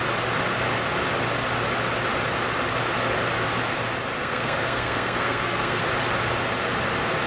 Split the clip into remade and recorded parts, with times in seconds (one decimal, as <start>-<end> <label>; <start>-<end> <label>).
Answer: 0.0-4.2 recorded; 4.2-5.8 remade; 5.8-7.3 recorded